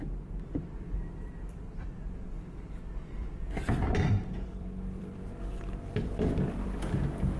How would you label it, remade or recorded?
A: remade